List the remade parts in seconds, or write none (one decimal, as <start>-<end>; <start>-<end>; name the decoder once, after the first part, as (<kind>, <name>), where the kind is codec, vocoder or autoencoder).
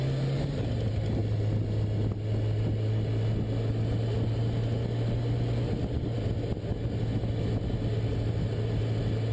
none